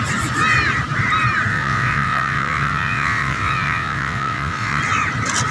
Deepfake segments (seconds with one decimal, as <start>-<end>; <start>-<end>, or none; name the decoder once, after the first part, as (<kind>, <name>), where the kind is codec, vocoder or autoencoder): 1.5-4.8 (vocoder, WaveNeXt)